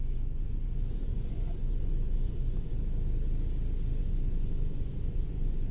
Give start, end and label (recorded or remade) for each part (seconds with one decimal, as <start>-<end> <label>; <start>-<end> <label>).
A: 0.0-2.7 remade; 2.7-4.0 recorded; 4.0-5.7 remade